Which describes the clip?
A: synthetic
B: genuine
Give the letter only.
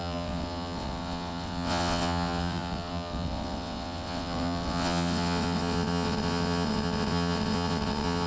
A